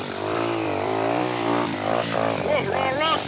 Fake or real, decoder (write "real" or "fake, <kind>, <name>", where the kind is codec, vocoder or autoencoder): fake, vocoder, BigVGAN v2